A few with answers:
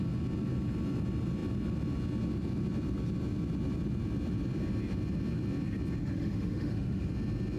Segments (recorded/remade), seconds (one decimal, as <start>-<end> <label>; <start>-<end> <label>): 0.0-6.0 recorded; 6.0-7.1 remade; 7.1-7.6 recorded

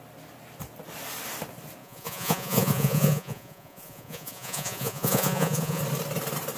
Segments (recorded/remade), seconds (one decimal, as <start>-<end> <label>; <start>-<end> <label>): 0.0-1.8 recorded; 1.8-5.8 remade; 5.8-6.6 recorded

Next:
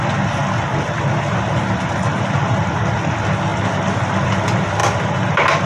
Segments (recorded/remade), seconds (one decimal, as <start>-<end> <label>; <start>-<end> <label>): 0.0-0.4 remade; 0.4-2.1 recorded; 2.1-3.5 remade; 3.5-4.2 recorded; 4.2-4.8 remade; 4.8-5.7 recorded

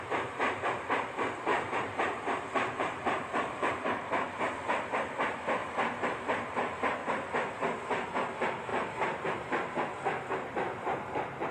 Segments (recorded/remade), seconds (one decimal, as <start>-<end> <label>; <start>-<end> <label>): 0.0-1.5 recorded; 1.5-3.7 remade; 3.7-5.6 recorded; 5.6-6.8 remade; 6.8-8.7 recorded; 8.7-9.7 remade; 9.7-11.5 recorded